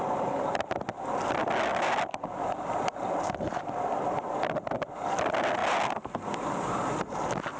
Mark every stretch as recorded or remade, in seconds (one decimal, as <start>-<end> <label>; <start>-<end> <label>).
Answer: 0.0-1.7 recorded; 1.7-5.1 remade; 5.1-7.6 recorded